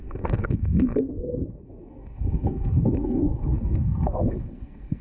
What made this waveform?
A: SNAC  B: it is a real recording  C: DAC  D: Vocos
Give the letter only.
A